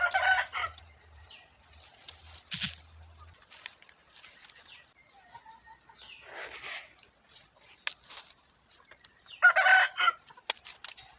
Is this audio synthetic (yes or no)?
no